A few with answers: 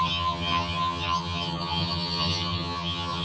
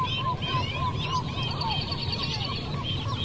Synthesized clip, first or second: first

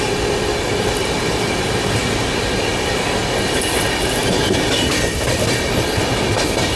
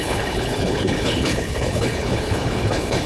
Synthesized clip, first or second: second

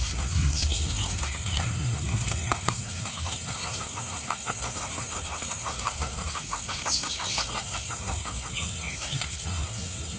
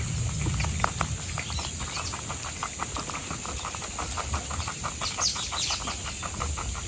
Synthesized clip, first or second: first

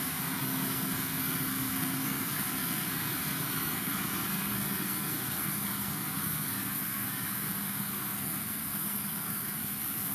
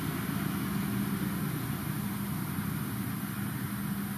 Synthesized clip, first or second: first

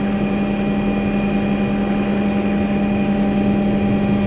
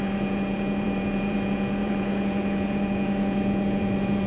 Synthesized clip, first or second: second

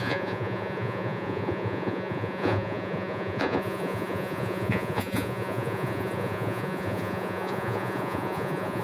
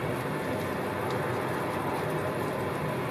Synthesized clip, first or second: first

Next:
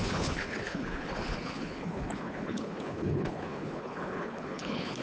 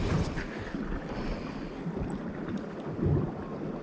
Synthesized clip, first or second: first